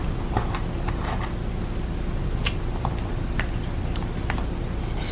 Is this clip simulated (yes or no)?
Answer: no